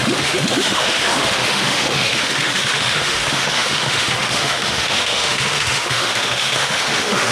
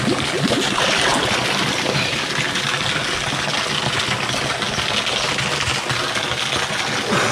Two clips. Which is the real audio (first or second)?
second